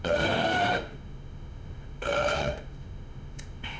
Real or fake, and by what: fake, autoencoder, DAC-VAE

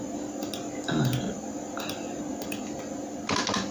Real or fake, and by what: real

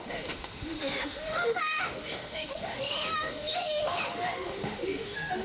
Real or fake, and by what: fake, autoencoder, DAC-VAE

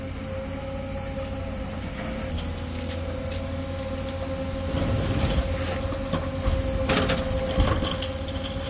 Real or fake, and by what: real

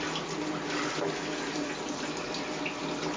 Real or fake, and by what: real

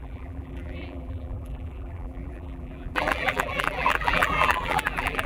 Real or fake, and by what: fake, vocoder, BigVGAN v2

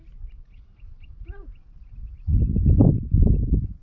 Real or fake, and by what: real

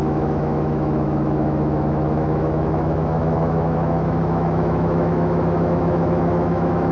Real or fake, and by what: fake, autoencoder, DAC-VAE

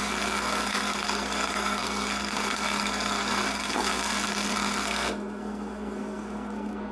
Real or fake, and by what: fake, codec, SNAC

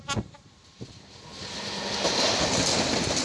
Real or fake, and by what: real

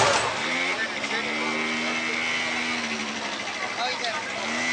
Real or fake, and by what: real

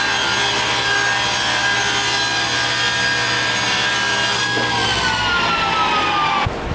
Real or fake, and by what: real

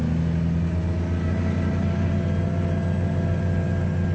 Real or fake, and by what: real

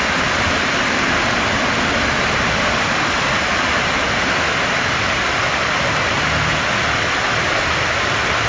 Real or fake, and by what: real